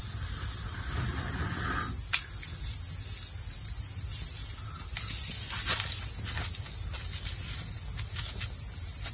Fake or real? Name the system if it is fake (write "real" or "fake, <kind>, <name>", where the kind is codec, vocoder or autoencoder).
real